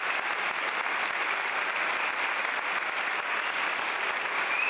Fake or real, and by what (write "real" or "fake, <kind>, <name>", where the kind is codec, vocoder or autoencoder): real